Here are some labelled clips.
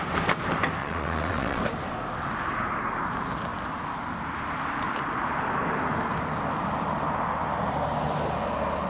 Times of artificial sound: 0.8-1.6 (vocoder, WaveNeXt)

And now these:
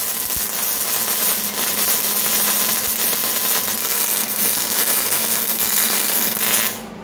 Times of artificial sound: 3.8-6.4 (codec, SNAC)

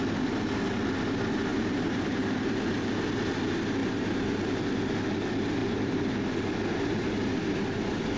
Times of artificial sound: 1.5-2.9 (vocoder, BigVGAN v2); 3.8-4.5; 5.6-6.2

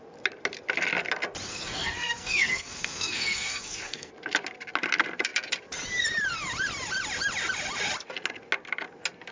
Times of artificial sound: 1.5-4.1 (codec, SNAC)

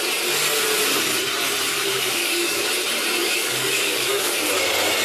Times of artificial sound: 1.7-2.7 (codec, DAC); 3.2-4.5

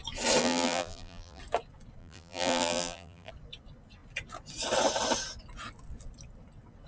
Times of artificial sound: 0.4-1.4 (vocoder, BigVGAN v2); 2.0-3.3

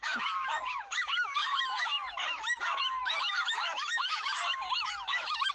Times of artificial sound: 0.0-5.5 (autoencoder, DAC-VAE)